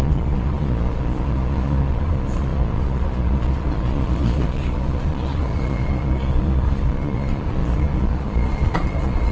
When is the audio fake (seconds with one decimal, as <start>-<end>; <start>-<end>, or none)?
0.0-9.3